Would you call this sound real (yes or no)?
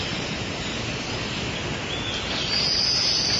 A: yes